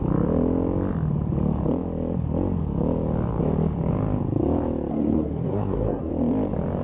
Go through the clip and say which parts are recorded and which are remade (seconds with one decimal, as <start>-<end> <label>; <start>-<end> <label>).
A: 0.0-4.9 recorded; 4.9-6.1 remade; 6.1-6.8 recorded